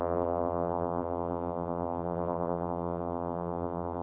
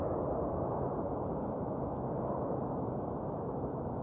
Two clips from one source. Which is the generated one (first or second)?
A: first